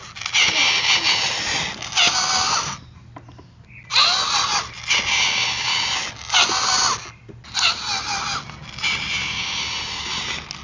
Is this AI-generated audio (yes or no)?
no